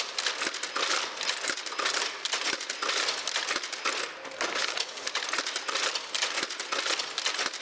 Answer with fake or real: real